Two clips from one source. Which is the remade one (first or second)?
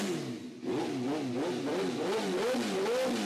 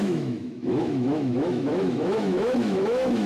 second